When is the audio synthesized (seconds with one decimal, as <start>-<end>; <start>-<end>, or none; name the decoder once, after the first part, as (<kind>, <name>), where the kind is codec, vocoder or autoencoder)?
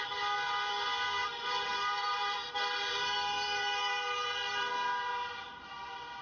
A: 1.2-4.7 (vocoder, BigVGAN v2)